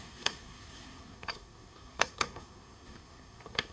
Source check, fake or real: fake